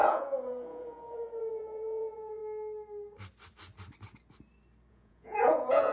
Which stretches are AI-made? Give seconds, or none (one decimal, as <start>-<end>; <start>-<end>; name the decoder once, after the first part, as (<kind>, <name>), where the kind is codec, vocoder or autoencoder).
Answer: 0.0-2.4 (vocoder, Vocos); 4.9-5.9